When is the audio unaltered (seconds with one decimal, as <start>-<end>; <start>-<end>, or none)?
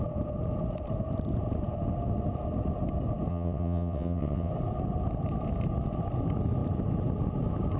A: 0.0-3.3; 4.5-7.8